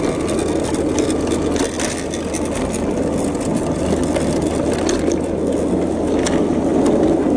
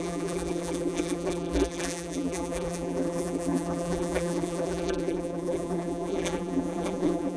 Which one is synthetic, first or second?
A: second